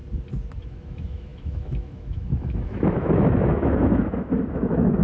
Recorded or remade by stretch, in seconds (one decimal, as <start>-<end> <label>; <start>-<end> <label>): 0.0-0.6 recorded; 0.6-5.0 remade